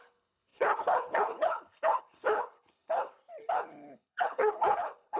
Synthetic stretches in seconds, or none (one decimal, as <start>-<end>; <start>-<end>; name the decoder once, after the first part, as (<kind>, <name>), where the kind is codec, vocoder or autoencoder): 0.0-5.2 (codec, HILCodec)